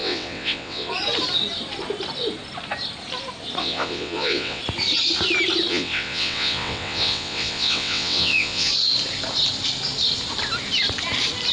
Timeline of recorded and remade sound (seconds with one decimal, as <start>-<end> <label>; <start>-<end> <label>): 0.0-0.9 remade; 0.9-3.6 recorded; 3.6-4.6 remade; 4.6-5.7 recorded; 5.7-8.7 remade; 8.7-11.5 recorded